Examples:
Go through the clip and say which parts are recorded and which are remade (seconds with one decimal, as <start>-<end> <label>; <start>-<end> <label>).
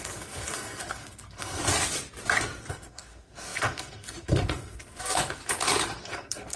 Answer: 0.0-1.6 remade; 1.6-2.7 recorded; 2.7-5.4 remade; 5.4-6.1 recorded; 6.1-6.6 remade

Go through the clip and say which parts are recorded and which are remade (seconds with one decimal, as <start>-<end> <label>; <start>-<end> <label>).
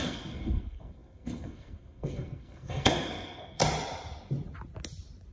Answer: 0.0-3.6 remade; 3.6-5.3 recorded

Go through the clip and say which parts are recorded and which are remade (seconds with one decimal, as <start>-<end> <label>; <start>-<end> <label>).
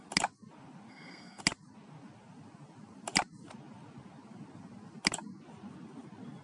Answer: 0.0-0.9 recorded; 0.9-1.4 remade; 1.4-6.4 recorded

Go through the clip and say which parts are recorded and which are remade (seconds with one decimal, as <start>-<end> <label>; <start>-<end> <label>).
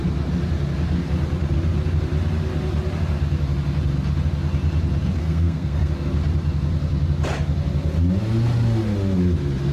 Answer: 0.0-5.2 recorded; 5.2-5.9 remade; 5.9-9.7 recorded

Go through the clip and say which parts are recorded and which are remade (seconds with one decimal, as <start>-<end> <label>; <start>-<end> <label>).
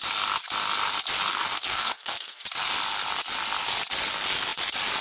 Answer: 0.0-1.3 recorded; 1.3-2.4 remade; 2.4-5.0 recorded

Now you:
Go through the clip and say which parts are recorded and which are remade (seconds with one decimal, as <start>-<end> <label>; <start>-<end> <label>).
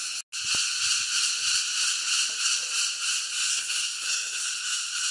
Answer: 0.0-3.5 recorded; 3.5-4.5 remade; 4.5-5.1 recorded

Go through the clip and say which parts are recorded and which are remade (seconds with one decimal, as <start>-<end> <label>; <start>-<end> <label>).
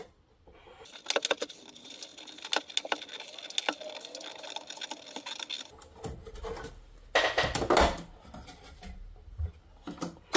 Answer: 0.0-10.4 recorded